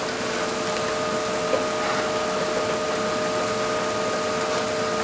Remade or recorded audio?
recorded